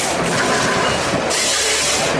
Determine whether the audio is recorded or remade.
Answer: recorded